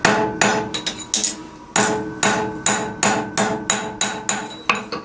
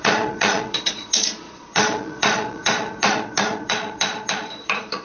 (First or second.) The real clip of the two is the first